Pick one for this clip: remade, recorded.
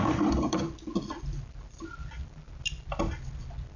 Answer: recorded